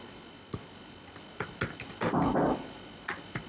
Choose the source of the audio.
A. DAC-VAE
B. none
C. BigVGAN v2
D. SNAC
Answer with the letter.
B